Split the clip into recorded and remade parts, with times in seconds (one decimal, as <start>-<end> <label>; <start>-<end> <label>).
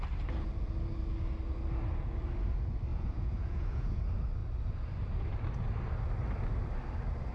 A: 0.0-2.9 recorded; 2.9-4.0 remade; 4.0-7.3 recorded